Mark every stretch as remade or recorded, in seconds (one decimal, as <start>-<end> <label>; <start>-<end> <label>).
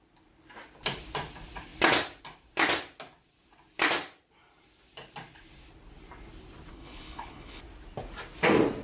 0.0-6.7 recorded; 6.7-7.6 remade; 7.6-8.8 recorded